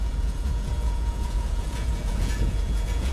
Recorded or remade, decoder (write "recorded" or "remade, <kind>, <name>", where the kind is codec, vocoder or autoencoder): remade, vocoder, Vocos